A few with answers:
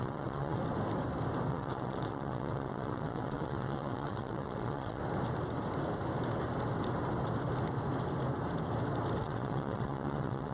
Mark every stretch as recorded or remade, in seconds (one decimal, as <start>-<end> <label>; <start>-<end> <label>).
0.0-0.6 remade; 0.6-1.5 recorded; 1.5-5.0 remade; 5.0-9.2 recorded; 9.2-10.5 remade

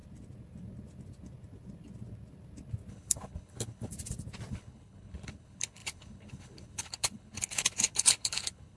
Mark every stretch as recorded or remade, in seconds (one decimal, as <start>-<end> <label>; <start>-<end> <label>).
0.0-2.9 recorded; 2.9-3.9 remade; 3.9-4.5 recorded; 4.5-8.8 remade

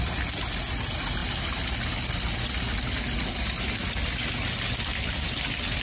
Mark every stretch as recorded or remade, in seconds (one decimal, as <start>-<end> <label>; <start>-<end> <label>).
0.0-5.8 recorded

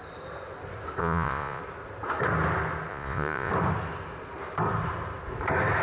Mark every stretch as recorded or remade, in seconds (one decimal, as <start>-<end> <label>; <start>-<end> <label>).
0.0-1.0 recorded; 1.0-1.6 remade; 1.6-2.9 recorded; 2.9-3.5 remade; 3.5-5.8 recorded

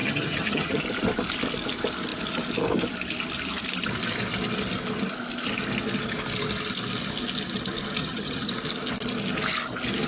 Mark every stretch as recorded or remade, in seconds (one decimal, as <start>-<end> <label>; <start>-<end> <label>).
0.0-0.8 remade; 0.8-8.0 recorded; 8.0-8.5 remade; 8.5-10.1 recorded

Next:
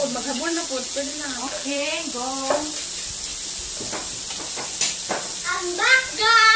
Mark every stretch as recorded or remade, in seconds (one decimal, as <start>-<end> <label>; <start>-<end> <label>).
0.0-2.0 remade; 2.0-6.6 recorded

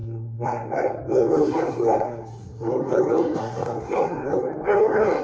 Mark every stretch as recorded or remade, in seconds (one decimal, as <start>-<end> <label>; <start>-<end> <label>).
0.0-5.2 remade